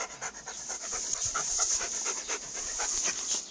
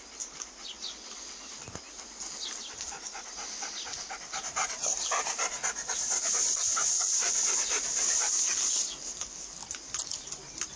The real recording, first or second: second